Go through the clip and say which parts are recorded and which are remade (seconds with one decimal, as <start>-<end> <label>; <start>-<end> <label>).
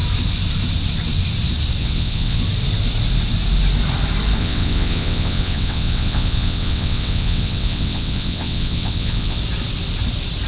0.0-1.8 recorded; 1.8-2.4 remade; 2.4-4.4 recorded; 4.4-9.4 remade; 9.4-10.5 recorded